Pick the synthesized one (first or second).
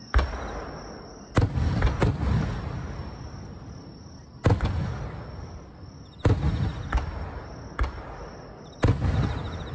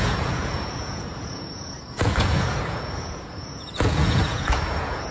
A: second